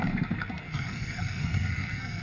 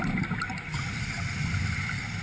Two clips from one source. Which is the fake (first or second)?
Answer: first